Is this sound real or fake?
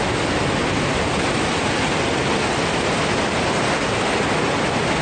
real